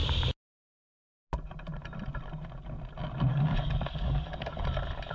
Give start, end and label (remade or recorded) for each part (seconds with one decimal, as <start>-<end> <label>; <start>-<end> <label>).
0.0-3.3 recorded; 3.3-4.6 remade; 4.6-5.1 recorded